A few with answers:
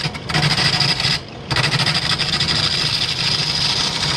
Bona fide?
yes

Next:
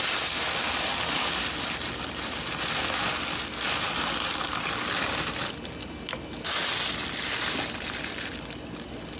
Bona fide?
yes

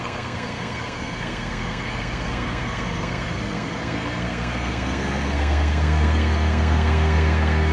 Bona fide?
no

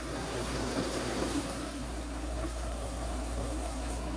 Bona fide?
no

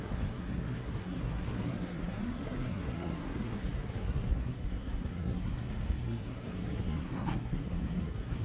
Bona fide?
no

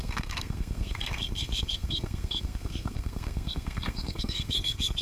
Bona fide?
no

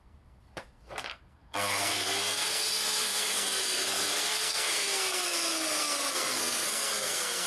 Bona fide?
no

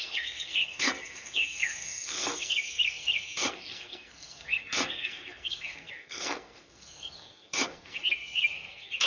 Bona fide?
no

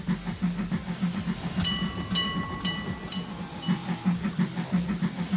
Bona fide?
yes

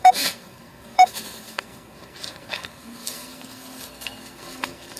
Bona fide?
no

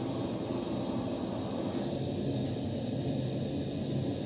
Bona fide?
yes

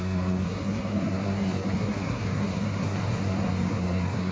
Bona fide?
no